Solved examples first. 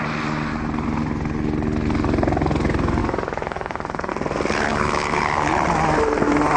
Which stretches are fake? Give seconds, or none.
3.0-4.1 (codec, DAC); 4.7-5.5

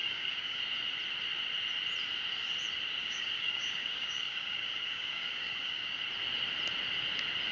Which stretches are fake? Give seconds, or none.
0.0-0.6 (codec, DAC); 3.0-6.0

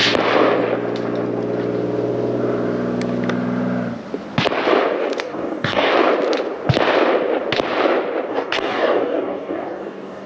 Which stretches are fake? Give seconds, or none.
5.2-5.9 (codec, DAC); 8.3-10.3

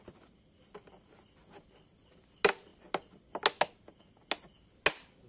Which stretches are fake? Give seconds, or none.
none

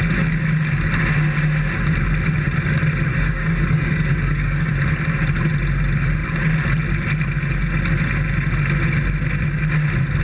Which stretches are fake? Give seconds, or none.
3.1-4.7 (codec, DAC)

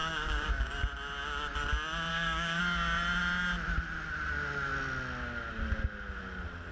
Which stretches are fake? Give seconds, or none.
0.0-0.7 (codec, DAC); 2.1-2.6

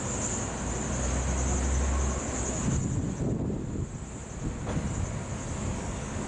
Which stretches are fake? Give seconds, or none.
5.7-6.3 (codec, DAC)

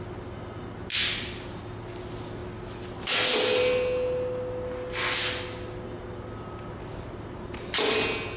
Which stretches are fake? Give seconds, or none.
none